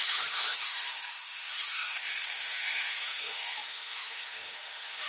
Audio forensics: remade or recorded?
remade